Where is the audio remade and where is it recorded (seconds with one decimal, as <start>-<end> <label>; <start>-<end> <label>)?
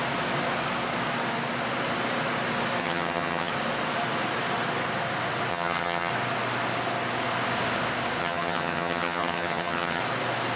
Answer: 0.0-2.8 recorded; 2.8-3.5 remade; 3.5-5.5 recorded; 5.5-6.1 remade; 6.1-8.2 recorded; 8.2-10.0 remade; 10.0-10.6 recorded